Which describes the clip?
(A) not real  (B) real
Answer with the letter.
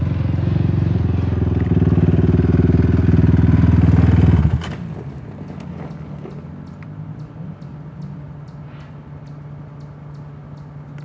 B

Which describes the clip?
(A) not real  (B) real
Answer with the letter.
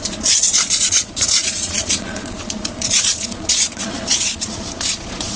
A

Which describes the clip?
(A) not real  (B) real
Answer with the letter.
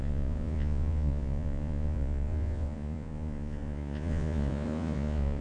A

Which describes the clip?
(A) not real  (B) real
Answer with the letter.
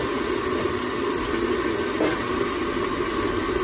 B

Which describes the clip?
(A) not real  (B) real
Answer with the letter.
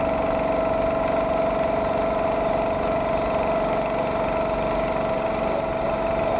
B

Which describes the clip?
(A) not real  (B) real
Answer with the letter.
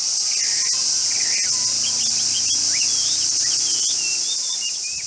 B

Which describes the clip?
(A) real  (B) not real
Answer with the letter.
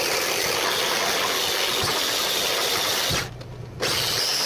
A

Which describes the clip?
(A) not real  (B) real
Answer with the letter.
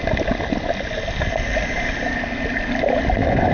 B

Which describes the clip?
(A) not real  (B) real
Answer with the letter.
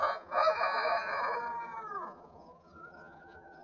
A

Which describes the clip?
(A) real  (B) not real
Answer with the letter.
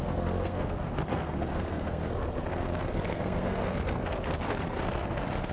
B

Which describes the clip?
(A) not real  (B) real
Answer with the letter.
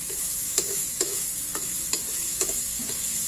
A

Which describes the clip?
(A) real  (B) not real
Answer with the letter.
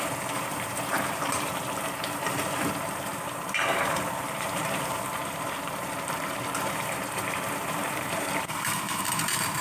B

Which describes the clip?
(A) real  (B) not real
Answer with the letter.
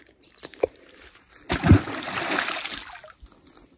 A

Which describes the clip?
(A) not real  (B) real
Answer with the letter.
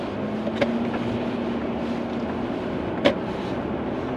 B